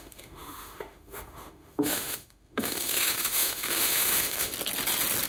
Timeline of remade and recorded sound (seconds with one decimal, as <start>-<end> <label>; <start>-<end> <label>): 0.0-4.5 remade; 4.5-5.3 recorded